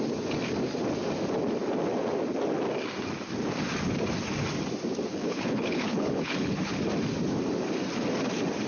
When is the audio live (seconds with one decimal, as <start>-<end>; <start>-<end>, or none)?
0.0-5.1; 6.8-8.7